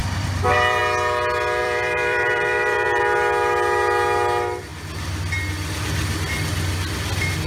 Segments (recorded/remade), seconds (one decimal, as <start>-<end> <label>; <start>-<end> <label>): 0.0-0.8 remade; 0.8-1.6 recorded; 1.6-3.0 remade; 3.0-7.5 recorded